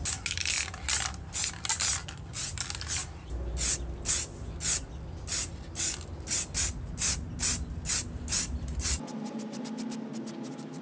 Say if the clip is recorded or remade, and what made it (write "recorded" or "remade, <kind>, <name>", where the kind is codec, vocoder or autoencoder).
recorded